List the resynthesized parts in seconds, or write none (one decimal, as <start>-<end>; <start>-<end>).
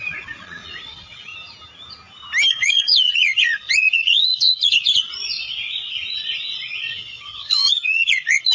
0.0-1.3; 2.5-8.5